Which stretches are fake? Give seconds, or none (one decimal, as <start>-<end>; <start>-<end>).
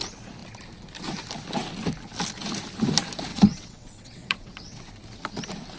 3.3-4.9